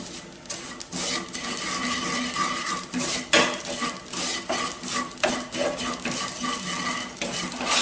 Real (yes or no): yes